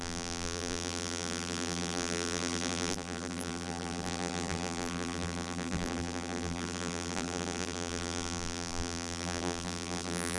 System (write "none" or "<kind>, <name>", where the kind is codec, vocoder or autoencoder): vocoder, BigVGAN v2